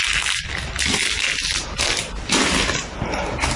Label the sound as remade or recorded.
recorded